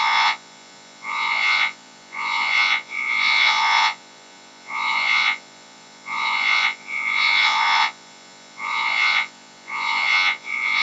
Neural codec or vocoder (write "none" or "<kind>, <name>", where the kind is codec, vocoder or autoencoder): vocoder, Vocos